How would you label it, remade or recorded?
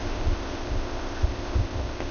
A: remade